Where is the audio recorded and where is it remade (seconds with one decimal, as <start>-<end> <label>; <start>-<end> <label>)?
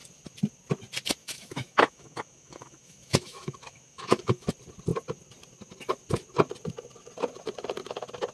0.0-1.2 recorded; 1.2-4.5 remade; 4.5-8.3 recorded